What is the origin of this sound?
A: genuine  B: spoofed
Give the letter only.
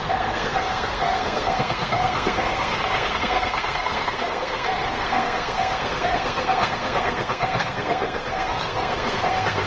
B